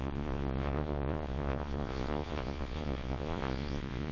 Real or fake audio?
fake